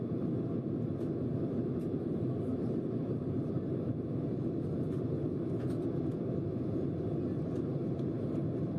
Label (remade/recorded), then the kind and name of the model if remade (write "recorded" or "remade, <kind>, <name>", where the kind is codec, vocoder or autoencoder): recorded